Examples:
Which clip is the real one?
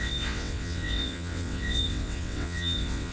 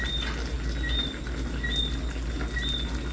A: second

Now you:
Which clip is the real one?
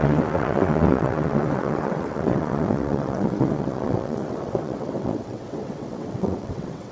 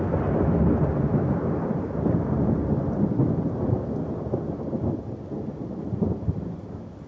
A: second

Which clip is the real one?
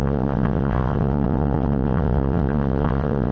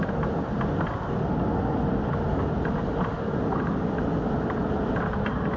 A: second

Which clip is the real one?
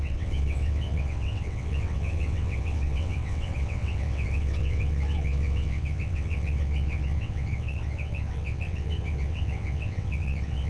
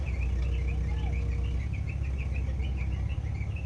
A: second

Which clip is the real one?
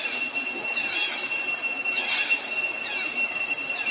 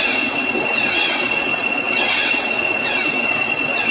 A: first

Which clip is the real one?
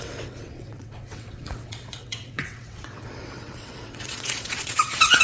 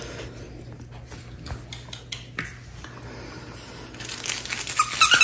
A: second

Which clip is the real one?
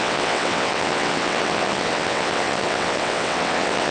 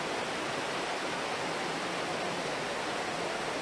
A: second